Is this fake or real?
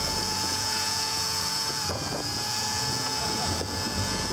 fake